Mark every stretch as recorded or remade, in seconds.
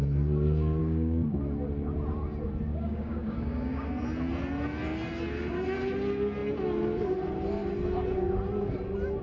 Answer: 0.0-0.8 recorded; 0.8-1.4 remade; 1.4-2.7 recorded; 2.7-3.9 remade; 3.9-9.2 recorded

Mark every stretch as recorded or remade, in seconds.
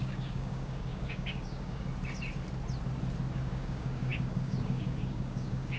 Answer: 0.0-1.9 remade; 1.9-3.3 recorded; 3.3-5.8 remade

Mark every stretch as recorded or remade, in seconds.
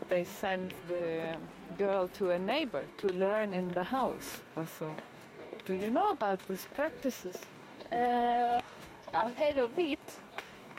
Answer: 0.0-1.0 remade; 1.0-2.8 recorded; 2.8-10.8 remade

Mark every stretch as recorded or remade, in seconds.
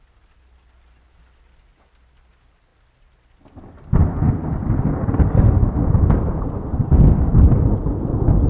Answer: 0.0-8.5 recorded